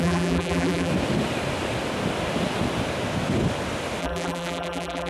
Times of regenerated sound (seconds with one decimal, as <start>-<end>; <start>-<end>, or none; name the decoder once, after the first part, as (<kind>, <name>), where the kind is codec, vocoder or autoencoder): 0.0-0.9 (vocoder, BigVGAN v2); 4.0-5.1